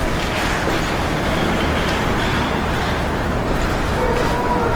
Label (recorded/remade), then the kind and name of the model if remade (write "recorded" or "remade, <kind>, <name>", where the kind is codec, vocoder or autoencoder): recorded